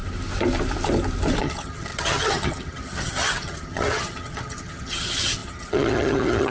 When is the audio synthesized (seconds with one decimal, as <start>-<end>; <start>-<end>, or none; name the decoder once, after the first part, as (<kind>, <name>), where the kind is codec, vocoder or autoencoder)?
1.4-6.5 (vocoder, HiFi-GAN)

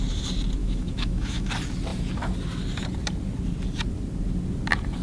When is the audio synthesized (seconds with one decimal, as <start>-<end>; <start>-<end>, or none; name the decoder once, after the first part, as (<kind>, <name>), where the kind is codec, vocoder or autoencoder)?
0.6-1.5 (autoencoder, DAC-VAE)